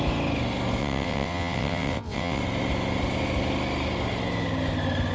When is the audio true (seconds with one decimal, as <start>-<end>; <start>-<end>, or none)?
0.0-0.8; 2.4-5.1